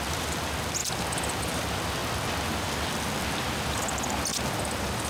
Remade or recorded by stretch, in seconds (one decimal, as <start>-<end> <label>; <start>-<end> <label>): 0.0-5.1 recorded